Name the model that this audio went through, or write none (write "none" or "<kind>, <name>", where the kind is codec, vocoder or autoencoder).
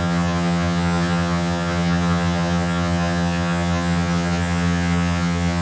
vocoder, HiFi-GAN